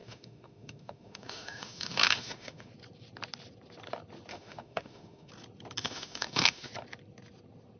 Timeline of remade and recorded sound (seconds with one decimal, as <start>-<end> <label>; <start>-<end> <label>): 0.0-2.7 remade; 2.7-4.3 recorded; 4.3-5.3 remade; 5.3-5.8 recorded; 5.8-6.7 remade; 6.7-7.8 recorded